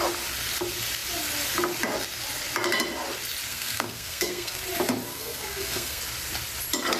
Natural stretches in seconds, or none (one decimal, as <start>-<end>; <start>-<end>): 0.0-3.5; 4.6-5.1; 6.0-7.0